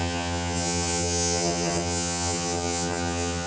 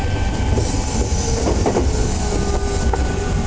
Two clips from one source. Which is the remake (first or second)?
first